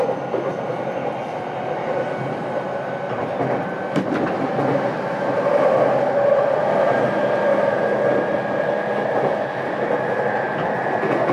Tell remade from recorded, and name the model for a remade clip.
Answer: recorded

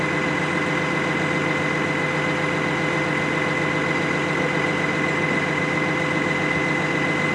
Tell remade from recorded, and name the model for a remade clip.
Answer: recorded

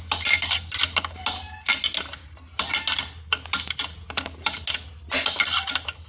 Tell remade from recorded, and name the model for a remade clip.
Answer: recorded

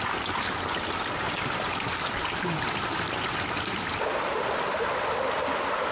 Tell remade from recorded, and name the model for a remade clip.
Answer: recorded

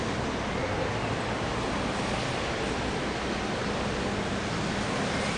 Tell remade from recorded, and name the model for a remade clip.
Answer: recorded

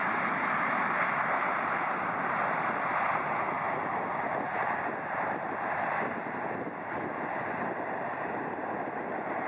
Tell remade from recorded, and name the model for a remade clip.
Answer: recorded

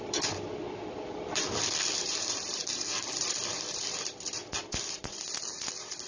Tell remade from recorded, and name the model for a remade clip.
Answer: remade, vocoder, BigVGAN v2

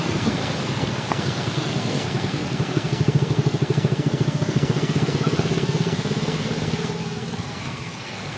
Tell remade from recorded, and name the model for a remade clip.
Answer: remade, codec, SNAC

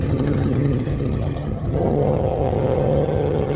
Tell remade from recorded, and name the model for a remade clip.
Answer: remade, vocoder, HiFi-GAN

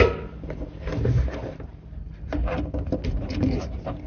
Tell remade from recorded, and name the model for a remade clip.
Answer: recorded